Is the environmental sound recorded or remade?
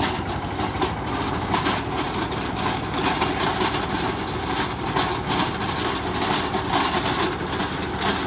recorded